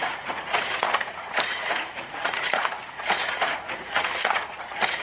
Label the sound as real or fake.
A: fake